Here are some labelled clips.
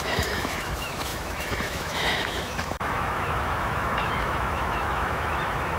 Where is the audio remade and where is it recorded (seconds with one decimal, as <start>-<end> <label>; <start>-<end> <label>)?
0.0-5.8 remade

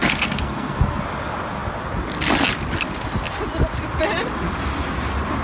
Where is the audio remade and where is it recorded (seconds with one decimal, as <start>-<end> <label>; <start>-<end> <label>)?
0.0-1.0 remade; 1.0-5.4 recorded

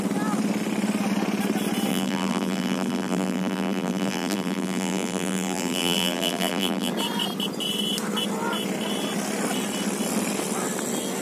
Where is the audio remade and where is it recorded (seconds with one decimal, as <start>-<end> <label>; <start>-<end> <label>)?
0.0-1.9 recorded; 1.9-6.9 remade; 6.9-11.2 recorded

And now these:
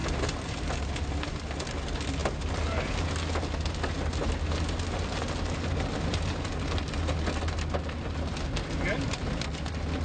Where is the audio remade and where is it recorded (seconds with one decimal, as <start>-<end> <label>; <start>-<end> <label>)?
0.0-10.0 recorded

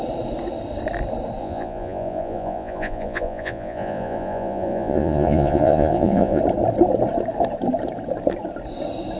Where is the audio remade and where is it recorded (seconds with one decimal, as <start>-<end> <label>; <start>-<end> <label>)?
0.0-1.4 recorded; 1.4-6.4 remade; 6.4-9.2 recorded